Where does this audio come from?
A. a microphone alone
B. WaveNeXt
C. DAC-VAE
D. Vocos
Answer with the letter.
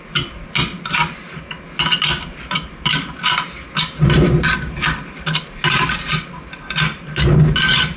A